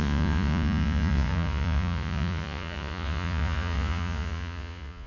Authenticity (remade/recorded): remade